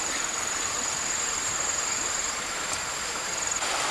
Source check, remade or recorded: remade